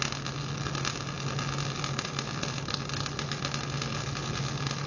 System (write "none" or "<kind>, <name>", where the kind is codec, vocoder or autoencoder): none